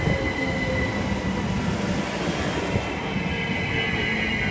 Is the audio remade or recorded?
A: recorded